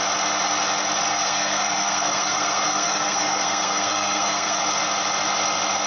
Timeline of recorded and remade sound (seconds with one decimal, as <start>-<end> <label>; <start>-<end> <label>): 0.0-1.1 recorded; 1.1-4.6 remade; 4.6-5.9 recorded